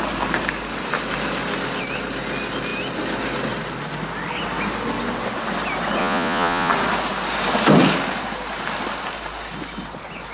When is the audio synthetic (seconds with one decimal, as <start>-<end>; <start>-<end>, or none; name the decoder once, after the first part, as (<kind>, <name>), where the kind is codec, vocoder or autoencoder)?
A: 6.0-6.7 (vocoder, Vocos)